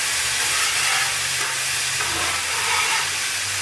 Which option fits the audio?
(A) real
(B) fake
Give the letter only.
A